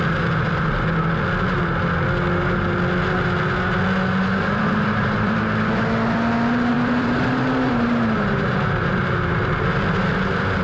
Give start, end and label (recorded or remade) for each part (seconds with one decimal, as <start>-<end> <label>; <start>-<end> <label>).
0.0-4.3 recorded; 4.3-5.4 remade; 5.4-6.7 recorded; 6.7-10.1 remade; 10.1-10.6 recorded

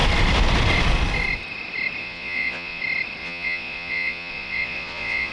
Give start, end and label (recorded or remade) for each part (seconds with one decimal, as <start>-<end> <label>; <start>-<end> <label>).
0.0-2.0 recorded; 2.0-2.8 remade; 2.8-3.2 recorded; 3.2-5.3 remade

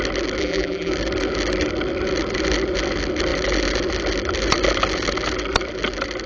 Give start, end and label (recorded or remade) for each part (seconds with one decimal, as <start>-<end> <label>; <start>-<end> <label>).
0.0-0.4 recorded; 0.4-0.9 remade; 0.9-6.3 recorded

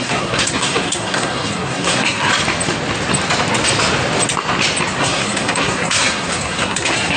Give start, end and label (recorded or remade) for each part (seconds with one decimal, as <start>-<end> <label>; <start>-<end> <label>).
0.0-2.3 remade; 2.3-5.0 recorded; 5.0-7.2 remade